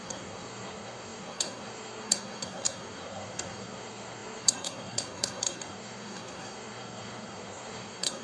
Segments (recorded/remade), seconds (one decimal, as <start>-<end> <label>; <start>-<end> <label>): 0.0-8.2 remade